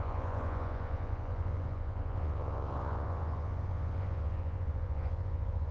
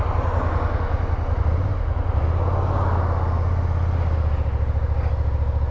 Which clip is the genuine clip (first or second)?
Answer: second